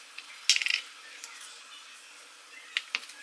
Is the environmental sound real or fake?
real